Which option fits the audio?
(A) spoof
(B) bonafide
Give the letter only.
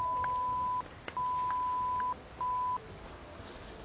B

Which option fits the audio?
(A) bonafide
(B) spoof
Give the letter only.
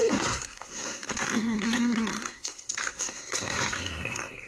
B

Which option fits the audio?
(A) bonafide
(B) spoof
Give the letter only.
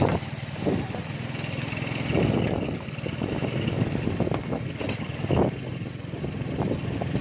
A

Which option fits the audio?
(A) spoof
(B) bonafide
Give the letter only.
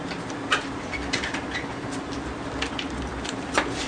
B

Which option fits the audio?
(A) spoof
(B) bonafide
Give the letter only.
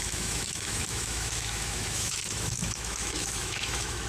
A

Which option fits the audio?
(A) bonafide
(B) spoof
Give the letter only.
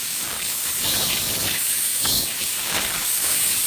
B